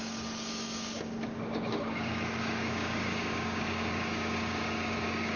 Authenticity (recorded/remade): remade